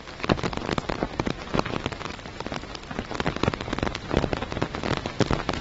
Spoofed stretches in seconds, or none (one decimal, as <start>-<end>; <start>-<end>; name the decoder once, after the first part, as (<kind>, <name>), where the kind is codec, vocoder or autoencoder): none